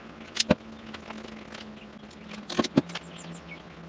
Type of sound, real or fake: real